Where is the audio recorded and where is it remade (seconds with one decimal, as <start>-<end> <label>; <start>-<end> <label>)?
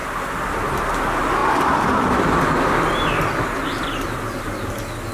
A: 0.0-1.4 recorded; 1.4-4.5 remade; 4.5-5.1 recorded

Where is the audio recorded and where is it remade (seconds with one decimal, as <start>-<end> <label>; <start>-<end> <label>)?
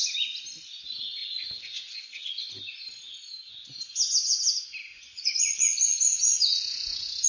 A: 0.0-1.2 recorded; 1.2-2.5 remade; 2.5-4.9 recorded; 4.9-7.3 remade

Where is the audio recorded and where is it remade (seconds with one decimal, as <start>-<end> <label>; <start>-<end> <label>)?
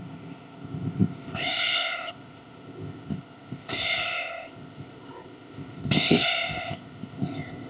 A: 0.0-7.7 remade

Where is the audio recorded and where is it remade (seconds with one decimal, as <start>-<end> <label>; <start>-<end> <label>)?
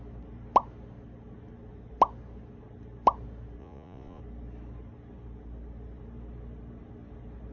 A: 0.0-3.6 recorded; 3.6-4.2 remade; 4.2-7.5 recorded